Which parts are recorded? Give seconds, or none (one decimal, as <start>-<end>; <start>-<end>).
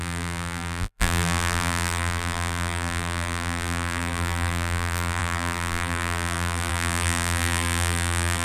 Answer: none